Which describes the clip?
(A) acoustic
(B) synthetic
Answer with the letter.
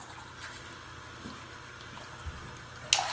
A